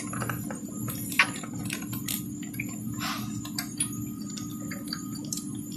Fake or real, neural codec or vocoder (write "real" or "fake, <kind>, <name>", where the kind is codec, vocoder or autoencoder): real